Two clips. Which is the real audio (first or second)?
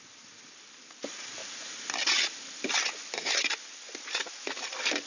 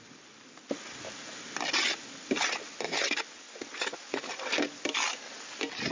second